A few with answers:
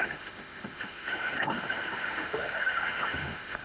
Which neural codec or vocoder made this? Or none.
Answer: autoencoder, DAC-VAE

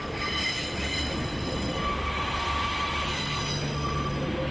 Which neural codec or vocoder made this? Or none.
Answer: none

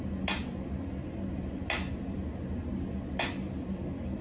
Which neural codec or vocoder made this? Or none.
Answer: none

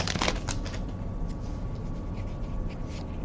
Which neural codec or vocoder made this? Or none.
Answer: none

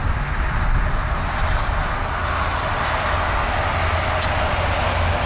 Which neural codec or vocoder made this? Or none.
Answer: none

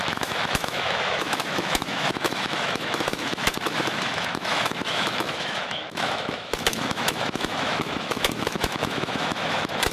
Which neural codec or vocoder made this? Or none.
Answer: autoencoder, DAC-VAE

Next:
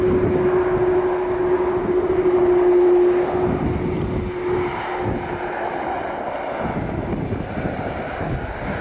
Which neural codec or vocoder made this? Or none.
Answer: none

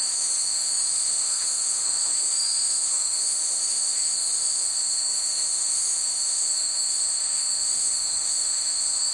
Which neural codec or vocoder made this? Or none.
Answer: autoencoder, DAC-VAE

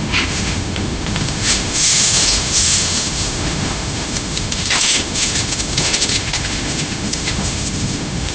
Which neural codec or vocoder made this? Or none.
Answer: autoencoder, DAC-VAE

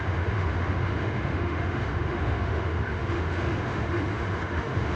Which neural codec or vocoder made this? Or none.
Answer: autoencoder, DAC-VAE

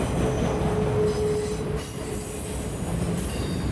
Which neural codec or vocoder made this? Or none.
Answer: none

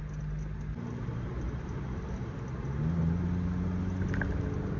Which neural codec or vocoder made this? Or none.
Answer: none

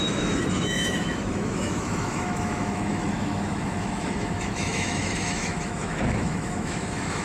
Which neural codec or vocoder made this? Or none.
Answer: autoencoder, DAC-VAE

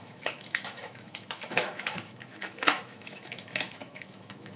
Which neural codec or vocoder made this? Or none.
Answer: autoencoder, DAC-VAE